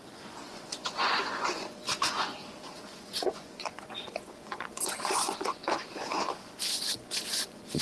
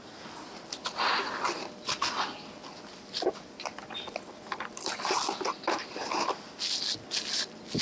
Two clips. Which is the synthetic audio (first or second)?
first